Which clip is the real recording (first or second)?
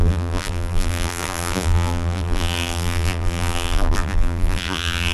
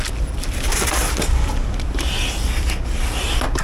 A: second